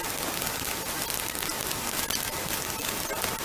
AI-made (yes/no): no